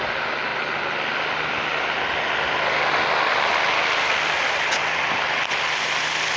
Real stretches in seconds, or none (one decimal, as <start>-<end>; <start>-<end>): 0.0-6.4